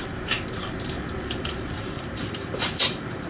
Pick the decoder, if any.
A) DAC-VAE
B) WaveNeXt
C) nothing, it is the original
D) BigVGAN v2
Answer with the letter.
D